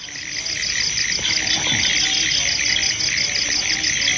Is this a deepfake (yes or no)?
no